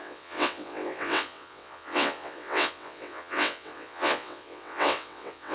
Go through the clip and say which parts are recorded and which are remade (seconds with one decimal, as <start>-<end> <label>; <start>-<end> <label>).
0.0-5.5 remade